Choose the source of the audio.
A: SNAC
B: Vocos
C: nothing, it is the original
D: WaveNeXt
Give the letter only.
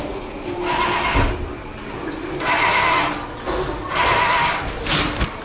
C